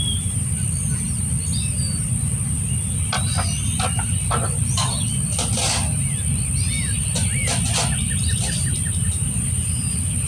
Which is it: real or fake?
real